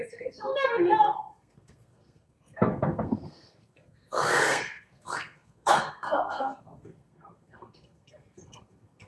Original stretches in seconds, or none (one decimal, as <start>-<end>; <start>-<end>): none